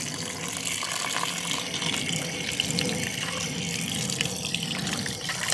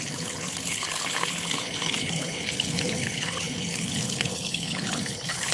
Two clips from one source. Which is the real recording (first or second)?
first